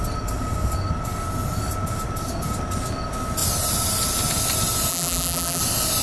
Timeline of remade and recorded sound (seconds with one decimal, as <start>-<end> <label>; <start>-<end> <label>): 0.0-4.9 recorded; 4.9-5.6 remade; 5.6-6.0 recorded